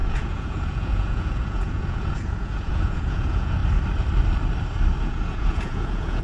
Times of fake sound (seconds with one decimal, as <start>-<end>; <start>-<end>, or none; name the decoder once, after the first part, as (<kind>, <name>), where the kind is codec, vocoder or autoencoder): 0.0-3.6 (vocoder, Vocos); 5.0-6.2